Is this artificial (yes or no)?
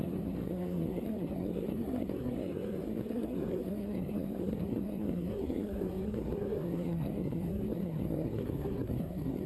yes